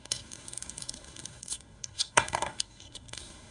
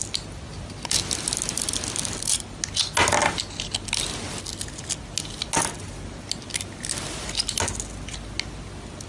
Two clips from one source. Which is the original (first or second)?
second